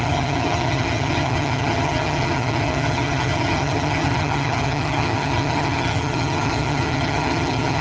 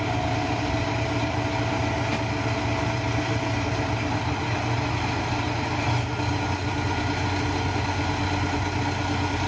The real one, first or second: second